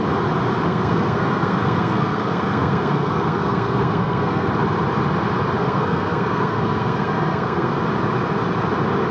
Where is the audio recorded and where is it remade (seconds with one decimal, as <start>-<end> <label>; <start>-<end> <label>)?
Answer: 0.0-0.7 recorded; 0.7-4.5 remade; 4.5-5.6 recorded; 5.6-7.8 remade; 7.8-9.1 recorded